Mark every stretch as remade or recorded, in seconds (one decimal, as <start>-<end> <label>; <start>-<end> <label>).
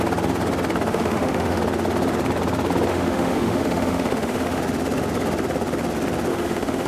0.0-0.9 recorded; 0.9-1.6 remade; 1.6-2.9 recorded; 2.9-4.6 remade; 4.6-6.3 recorded; 6.3-6.9 remade